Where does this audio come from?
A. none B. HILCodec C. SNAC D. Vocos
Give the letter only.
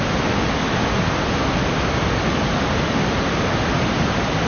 A